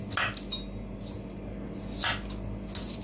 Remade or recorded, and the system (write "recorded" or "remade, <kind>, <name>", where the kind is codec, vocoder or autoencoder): recorded